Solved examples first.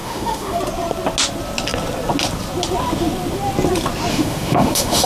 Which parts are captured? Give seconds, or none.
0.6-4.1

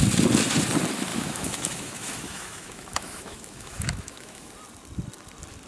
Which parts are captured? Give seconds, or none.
0.0-1.1; 4.5-5.7